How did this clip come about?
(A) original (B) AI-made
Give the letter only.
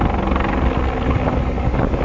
A